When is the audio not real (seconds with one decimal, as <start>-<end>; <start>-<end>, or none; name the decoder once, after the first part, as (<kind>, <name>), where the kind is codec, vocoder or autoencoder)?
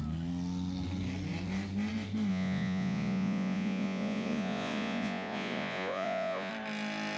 2.3-6.5 (vocoder, Vocos)